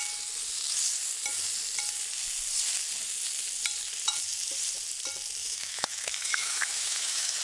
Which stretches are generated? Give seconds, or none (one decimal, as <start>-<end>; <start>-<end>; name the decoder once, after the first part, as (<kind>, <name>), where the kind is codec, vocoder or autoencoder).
5.4-7.4 (autoencoder, DAC-VAE)